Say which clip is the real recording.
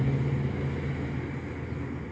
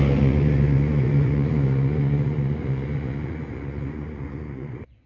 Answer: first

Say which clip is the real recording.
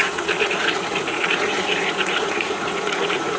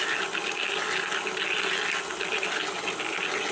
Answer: second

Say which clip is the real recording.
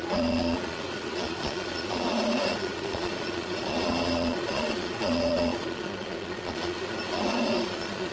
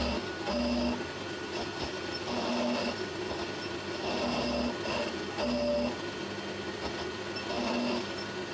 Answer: second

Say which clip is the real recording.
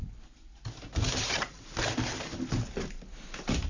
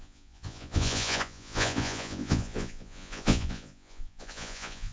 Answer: first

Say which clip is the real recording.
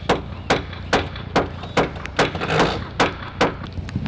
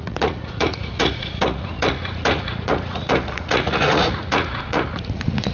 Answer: first